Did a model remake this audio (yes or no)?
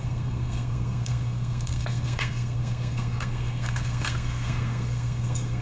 yes